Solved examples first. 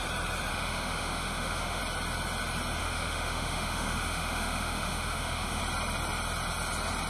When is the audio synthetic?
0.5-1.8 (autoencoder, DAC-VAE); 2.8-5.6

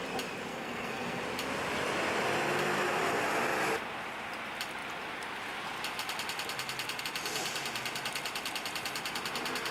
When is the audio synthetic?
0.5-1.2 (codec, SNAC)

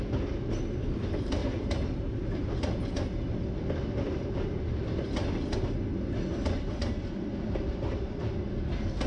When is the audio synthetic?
1.4-2.8 (vocoder, BigVGAN v2)

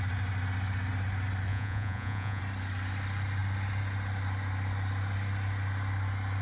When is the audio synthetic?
1.5-2.4 (vocoder, Vocos)

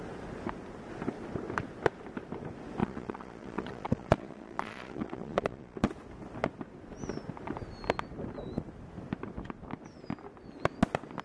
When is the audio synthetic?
2.8-5.9 (vocoder, Vocos)

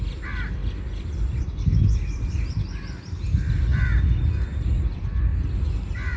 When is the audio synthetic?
0.6-4.2 (vocoder, BigVGAN v2); 5.3-6.2